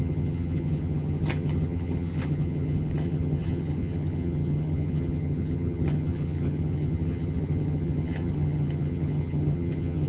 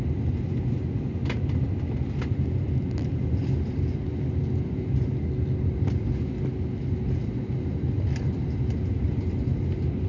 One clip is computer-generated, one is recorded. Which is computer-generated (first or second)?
first